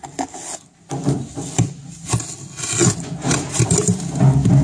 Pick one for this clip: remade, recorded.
recorded